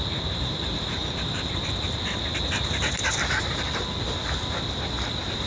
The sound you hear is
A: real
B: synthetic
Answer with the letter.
A